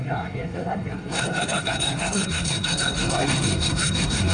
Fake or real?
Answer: fake